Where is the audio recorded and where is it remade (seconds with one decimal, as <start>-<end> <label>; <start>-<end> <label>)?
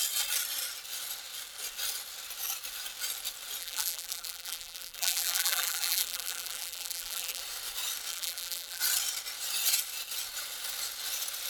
0.0-3.6 recorded; 3.6-7.4 remade; 7.4-8.1 recorded; 8.1-8.8 remade; 8.8-11.5 recorded